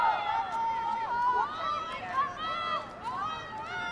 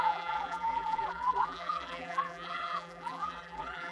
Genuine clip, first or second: first